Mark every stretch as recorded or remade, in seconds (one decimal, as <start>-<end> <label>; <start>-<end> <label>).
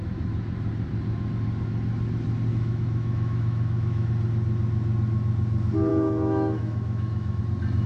0.0-2.5 recorded; 2.5-4.1 remade; 4.1-5.9 recorded; 5.9-7.4 remade; 7.4-7.9 recorded